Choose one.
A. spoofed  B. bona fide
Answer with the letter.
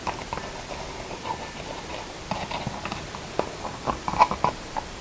B